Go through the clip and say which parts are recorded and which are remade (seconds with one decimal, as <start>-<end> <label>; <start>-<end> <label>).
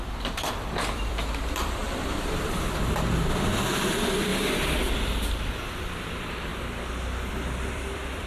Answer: 0.0-4.3 remade; 4.3-5.0 recorded; 5.0-6.5 remade; 6.5-7.3 recorded; 7.3-8.3 remade